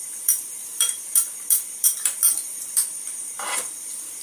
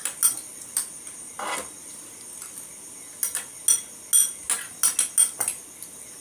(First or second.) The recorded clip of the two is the second